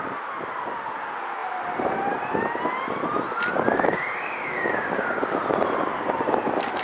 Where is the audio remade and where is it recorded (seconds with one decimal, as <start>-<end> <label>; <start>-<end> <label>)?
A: 0.0-3.7 recorded; 3.7-5.2 remade; 5.2-6.8 recorded